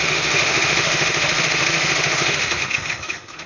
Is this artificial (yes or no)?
yes